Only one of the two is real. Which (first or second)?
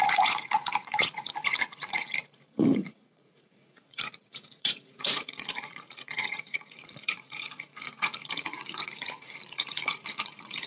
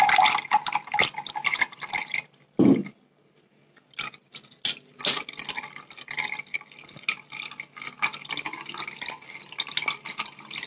second